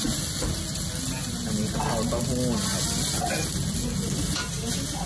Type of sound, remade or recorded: recorded